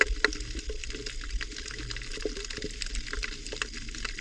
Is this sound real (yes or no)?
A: yes